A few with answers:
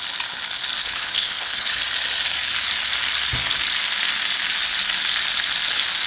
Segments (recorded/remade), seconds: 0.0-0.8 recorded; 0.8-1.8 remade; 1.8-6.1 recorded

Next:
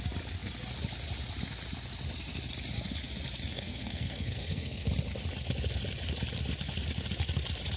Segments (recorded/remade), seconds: 0.0-3.5 recorded; 3.5-4.9 remade; 4.9-7.8 recorded

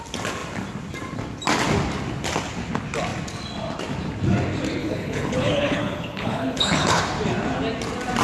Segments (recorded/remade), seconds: 0.0-4.8 recorded; 4.8-7.0 remade; 7.0-8.2 recorded

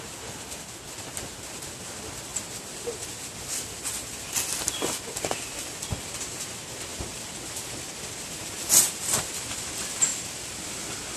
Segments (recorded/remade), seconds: 0.0-11.2 recorded

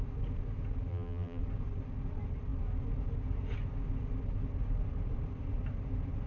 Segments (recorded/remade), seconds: 0.0-0.9 recorded; 0.9-1.4 remade; 1.4-6.3 recorded